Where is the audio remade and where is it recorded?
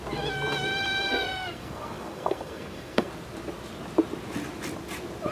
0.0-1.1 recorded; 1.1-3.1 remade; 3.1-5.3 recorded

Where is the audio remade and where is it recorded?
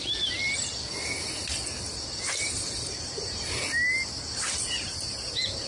0.0-5.7 recorded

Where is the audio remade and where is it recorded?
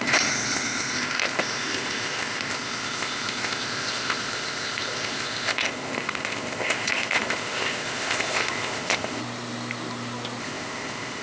0.0-9.2 remade; 9.2-10.4 recorded; 10.4-11.2 remade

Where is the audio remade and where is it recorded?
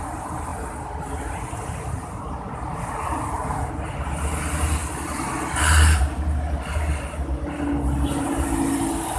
0.0-9.2 recorded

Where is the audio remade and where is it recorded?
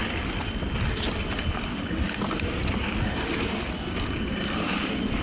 0.0-5.2 recorded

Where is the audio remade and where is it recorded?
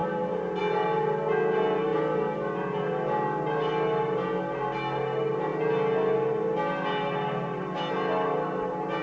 0.0-9.0 recorded